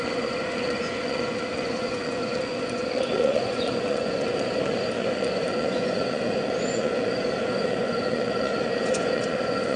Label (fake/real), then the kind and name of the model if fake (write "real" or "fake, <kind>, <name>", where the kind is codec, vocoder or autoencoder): fake, vocoder, Vocos